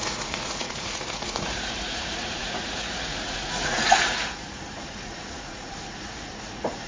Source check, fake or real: fake